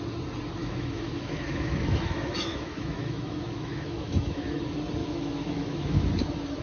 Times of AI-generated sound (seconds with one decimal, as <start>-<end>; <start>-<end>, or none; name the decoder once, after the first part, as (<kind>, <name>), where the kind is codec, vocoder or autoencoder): 0.6-4.6 (autoencoder, DAC-VAE); 5.0-6.1